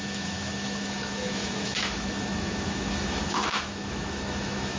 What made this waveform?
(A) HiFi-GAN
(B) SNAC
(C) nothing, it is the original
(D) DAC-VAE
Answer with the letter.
D